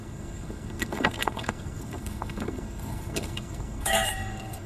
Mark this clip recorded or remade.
remade